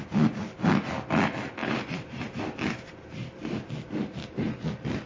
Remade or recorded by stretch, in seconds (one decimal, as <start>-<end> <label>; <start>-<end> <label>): 0.0-1.6 recorded; 1.6-2.2 remade; 2.2-5.1 recorded